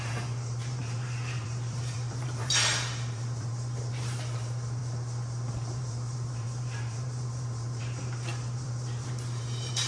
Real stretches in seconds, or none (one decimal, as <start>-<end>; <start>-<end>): 4.8-5.5